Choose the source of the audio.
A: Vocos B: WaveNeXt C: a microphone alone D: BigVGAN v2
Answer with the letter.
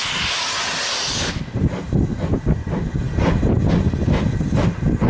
C